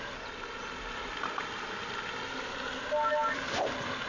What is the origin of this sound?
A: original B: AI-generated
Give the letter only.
A